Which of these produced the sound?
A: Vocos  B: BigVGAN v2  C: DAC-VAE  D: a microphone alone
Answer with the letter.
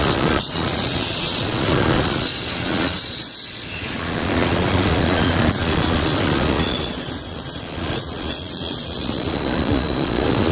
A